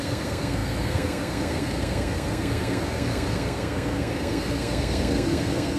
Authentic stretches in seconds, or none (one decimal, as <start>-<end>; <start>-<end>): none